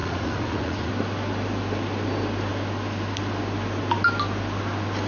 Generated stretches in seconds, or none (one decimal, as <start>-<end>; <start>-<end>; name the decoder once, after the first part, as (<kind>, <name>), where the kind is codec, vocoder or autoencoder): 0.0-0.9 (vocoder, Vocos)